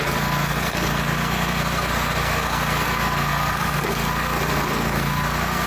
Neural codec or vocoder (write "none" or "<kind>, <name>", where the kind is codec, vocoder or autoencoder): codec, SNAC